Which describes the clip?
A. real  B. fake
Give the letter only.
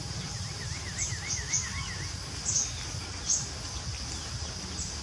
A